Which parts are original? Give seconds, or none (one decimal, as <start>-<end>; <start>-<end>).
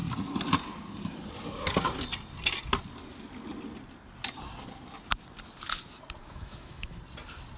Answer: 0.0-6.2; 7.0-7.6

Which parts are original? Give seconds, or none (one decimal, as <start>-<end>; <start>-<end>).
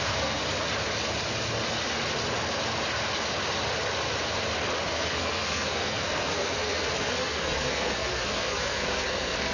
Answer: 0.4-4.9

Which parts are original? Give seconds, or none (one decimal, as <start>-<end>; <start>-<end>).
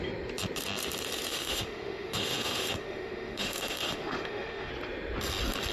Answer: 0.0-1.3; 4.7-5.7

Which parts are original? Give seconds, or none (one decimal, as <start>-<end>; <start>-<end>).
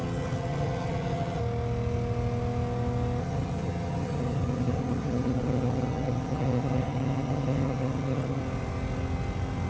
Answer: 1.4-3.2; 8.4-9.7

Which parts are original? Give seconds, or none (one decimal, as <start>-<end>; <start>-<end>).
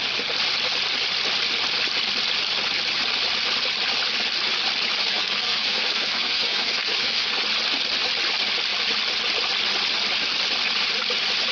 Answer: 0.0-5.0; 7.4-11.5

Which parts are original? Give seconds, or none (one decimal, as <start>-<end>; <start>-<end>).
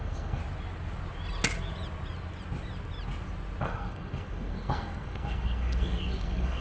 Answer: 0.4-3.6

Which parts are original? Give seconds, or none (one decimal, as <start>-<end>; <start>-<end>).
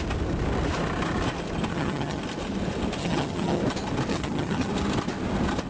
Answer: 0.0-1.7; 2.2-3.0; 3.6-4.1; 4.7-5.7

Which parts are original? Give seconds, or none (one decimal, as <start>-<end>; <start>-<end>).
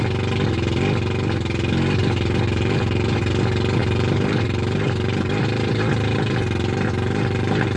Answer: 0.0-2.0; 3.3-3.8